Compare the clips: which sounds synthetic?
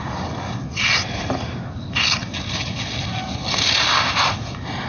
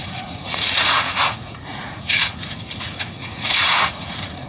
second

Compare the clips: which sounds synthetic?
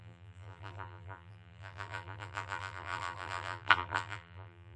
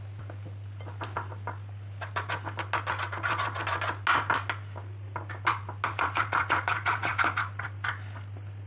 first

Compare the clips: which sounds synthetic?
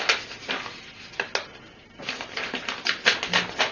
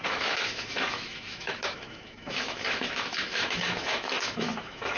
second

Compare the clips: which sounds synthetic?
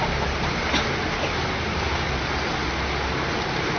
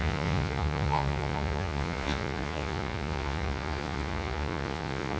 second